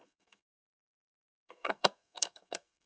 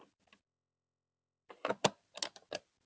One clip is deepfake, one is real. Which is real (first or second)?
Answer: second